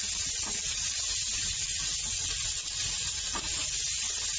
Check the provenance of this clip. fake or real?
real